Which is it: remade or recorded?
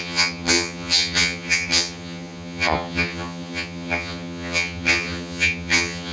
remade